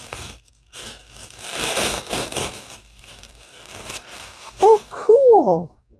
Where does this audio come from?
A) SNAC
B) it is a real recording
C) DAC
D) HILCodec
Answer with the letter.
C